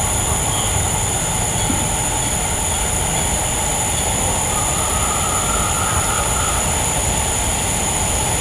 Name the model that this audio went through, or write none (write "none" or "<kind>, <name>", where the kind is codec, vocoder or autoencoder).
none